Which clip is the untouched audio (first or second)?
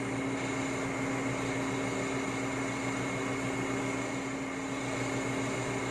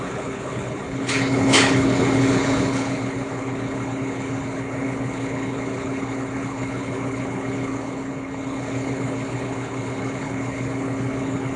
first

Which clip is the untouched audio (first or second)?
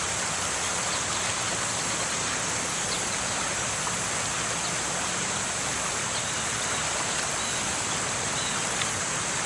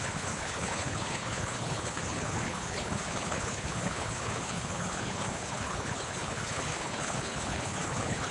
first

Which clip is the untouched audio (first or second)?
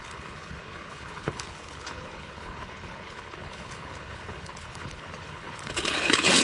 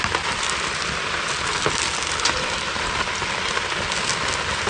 second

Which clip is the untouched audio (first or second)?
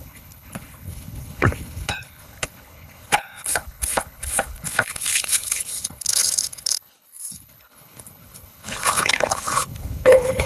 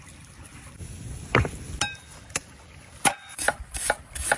second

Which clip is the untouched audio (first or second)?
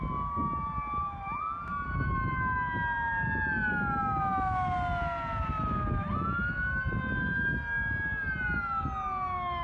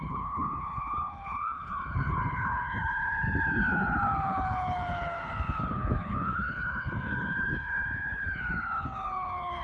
first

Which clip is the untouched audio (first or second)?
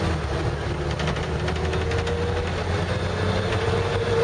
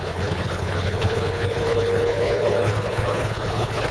first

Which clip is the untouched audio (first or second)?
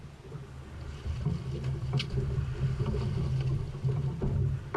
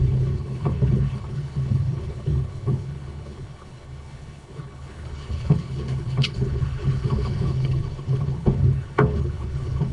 first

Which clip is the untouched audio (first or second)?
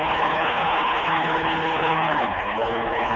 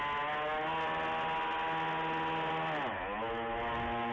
second